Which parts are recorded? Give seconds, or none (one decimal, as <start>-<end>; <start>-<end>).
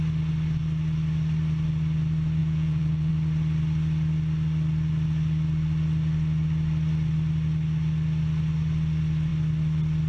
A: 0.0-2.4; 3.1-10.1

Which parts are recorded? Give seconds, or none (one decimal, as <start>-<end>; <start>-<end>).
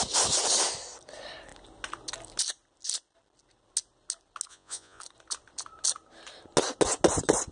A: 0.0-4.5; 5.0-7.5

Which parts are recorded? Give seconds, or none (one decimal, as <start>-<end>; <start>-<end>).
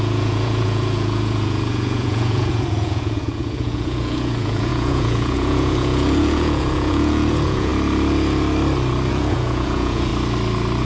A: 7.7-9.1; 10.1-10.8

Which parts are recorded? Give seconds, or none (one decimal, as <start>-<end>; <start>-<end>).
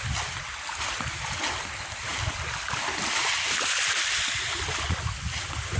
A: 0.0-5.8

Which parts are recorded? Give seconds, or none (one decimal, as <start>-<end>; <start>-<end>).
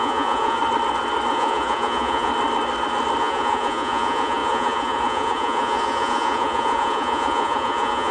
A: 0.6-1.3; 2.3-3.2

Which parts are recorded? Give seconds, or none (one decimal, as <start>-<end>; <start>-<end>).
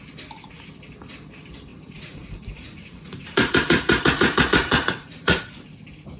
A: 0.0-1.7; 5.4-6.2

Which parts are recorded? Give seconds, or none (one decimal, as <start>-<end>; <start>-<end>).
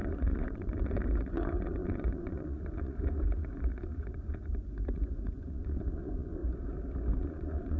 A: 6.4-7.2